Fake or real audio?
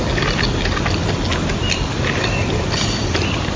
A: real